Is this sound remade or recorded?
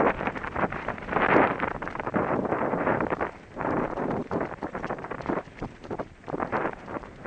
remade